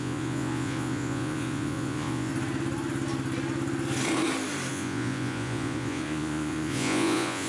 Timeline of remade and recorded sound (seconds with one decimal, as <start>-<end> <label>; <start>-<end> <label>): 0.0-2.3 remade; 2.3-4.7 recorded; 4.7-7.5 remade